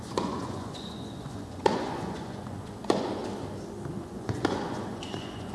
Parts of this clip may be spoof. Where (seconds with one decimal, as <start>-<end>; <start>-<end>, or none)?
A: 0.0-3.2; 3.9-5.5